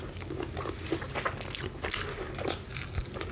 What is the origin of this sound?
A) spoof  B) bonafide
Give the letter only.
B